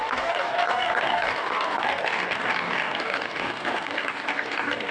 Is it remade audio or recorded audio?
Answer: remade